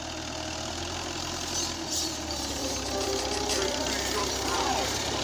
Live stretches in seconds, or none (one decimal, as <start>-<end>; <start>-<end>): 0.0-2.6